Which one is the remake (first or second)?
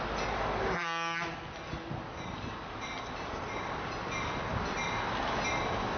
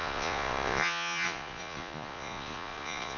second